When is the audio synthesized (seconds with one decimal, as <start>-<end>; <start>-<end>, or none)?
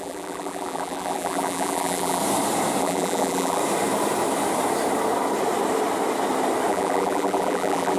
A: 0.0-2.2; 2.8-3.6; 6.7-8.0